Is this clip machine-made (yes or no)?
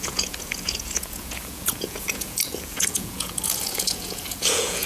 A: yes